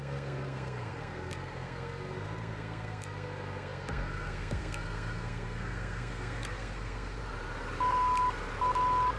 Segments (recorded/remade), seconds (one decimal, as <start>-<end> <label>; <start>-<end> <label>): 0.0-7.2 remade; 7.2-9.2 recorded